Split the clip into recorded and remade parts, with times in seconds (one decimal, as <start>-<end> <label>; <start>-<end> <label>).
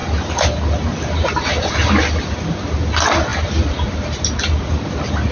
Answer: 0.0-5.3 recorded